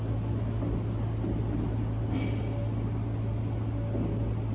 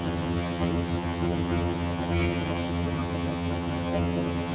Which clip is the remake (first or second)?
second